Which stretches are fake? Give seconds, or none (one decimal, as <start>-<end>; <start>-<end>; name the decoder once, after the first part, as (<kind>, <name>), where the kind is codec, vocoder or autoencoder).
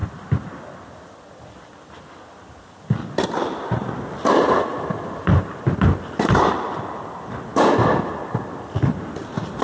none